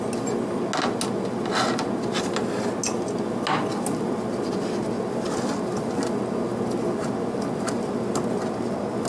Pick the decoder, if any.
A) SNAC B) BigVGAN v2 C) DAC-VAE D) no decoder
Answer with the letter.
D